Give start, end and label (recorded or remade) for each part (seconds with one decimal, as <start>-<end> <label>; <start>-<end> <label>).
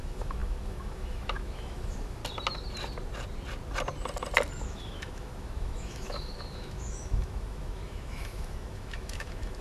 0.0-2.2 remade; 2.2-4.6 recorded; 4.6-9.6 remade